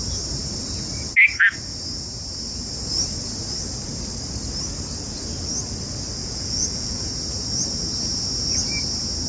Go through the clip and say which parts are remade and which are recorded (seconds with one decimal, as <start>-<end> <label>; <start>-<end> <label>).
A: 0.0-6.2 recorded; 6.2-7.1 remade; 7.1-9.3 recorded